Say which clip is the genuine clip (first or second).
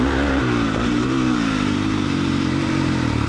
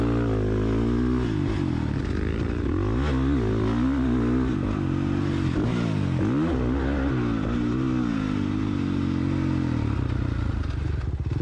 second